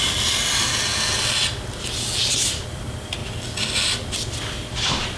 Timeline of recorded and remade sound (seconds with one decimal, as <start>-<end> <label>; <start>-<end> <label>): 0.0-0.9 remade; 0.9-2.3 recorded; 2.3-3.2 remade; 3.2-3.9 recorded; 3.9-5.2 remade